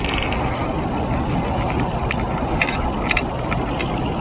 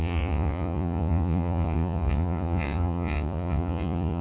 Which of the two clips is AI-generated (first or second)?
second